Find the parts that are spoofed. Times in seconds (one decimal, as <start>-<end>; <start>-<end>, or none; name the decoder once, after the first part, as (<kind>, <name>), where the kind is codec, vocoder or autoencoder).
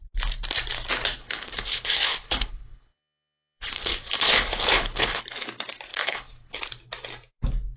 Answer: 1.2-5.2 (codec, HILCodec); 5.9-6.6